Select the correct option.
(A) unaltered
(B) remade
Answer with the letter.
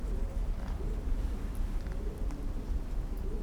B